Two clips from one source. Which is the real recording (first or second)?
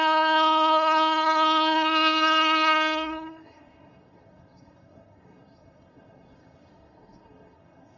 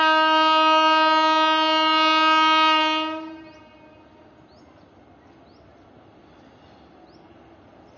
second